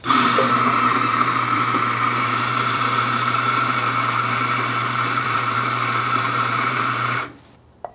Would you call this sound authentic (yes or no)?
no